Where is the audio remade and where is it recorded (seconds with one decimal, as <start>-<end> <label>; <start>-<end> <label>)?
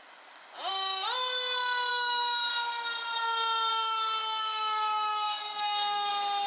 0.0-1.9 recorded; 1.9-2.5 remade; 2.5-3.7 recorded; 3.7-6.1 remade; 6.1-6.5 recorded